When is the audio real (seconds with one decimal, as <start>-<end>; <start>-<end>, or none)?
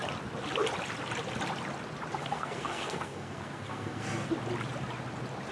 0.0-2.2; 4.3-5.5